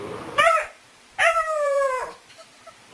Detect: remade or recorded remade